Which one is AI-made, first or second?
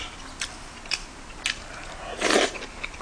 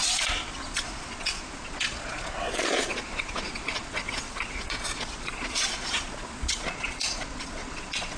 second